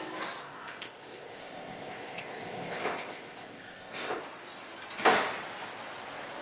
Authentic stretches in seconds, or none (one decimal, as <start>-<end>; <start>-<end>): 0.0-0.4; 4.2-6.4